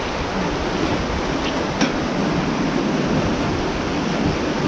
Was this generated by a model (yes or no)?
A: no